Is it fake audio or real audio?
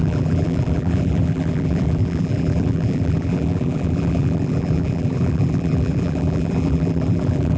fake